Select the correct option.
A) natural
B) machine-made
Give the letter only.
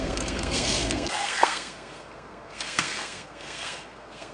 B